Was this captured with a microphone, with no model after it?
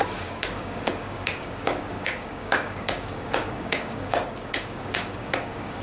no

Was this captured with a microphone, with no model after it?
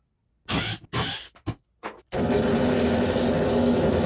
yes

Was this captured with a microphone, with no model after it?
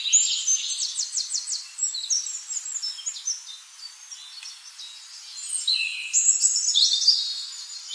yes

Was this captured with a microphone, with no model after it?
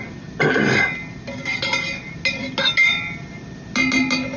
yes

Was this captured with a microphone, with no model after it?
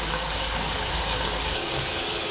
no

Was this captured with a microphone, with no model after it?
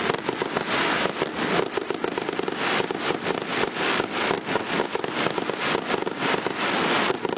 yes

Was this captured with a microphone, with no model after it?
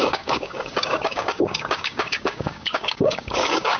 no